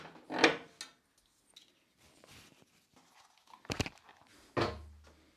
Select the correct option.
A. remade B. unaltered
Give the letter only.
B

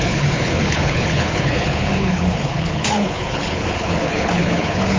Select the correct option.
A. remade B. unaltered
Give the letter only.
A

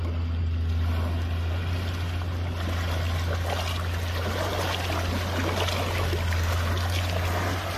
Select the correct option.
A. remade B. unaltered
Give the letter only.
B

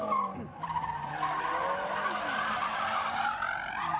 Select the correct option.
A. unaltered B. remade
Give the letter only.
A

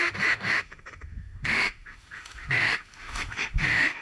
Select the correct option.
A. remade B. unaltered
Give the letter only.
A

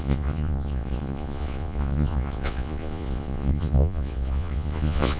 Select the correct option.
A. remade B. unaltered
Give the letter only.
A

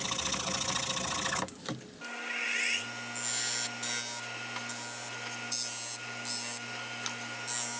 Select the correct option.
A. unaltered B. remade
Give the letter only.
A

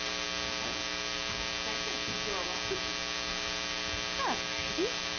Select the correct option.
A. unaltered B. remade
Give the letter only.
A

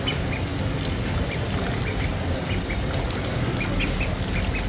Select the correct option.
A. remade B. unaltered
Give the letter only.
B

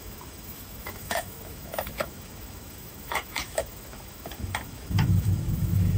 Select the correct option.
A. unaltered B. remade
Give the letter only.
B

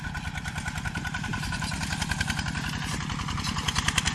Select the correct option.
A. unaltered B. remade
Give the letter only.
A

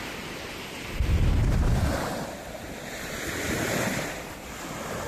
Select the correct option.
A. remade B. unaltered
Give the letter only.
A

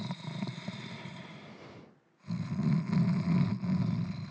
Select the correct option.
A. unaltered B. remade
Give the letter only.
A